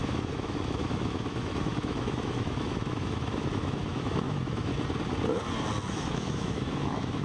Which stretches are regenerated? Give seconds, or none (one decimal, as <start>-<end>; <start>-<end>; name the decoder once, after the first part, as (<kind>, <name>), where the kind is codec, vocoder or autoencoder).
0.0-4.7 (autoencoder, DAC-VAE); 5.9-7.2